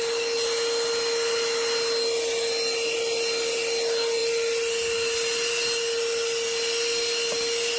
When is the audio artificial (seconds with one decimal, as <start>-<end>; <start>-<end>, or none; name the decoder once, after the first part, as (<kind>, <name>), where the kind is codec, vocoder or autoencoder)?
none